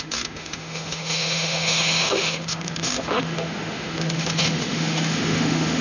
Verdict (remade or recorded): remade